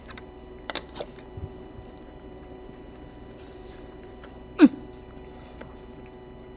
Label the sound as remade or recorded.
remade